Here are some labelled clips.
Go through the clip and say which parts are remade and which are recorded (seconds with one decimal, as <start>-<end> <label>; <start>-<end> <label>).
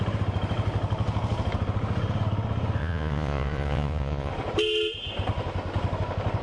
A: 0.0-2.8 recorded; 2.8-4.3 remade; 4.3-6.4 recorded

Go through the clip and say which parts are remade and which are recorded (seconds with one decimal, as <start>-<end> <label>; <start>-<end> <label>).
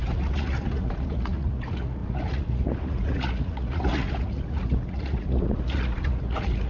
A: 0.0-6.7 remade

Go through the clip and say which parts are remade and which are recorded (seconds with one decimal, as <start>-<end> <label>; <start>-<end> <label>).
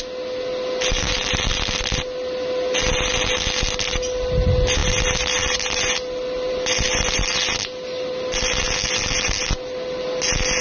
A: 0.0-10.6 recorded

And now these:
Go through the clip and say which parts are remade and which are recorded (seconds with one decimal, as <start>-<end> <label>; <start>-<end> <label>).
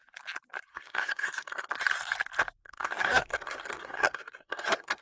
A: 0.0-0.7 recorded; 0.7-1.7 remade; 1.7-2.6 recorded; 2.6-5.0 remade